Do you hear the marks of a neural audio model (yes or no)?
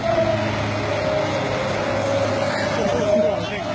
no